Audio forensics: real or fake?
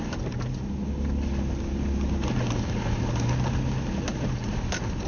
real